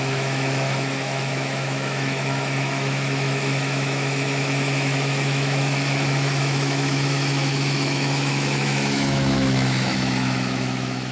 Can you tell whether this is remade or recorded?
remade